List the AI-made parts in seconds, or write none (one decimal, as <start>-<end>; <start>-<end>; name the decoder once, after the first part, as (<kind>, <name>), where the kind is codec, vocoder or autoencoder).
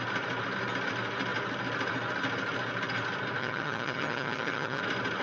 3.4-4.8 (vocoder, HiFi-GAN)